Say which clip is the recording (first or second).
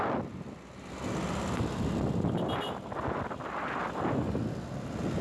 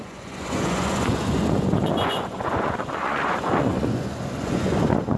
first